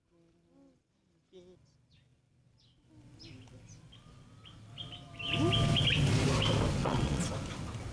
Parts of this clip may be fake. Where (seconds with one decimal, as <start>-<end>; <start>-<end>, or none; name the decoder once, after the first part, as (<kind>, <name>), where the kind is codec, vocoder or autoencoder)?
6.8-7.3 (vocoder, WaveNeXt)